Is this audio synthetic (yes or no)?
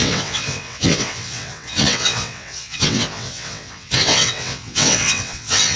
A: yes